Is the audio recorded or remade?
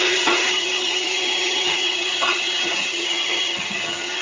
remade